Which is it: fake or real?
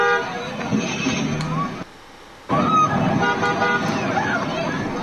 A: real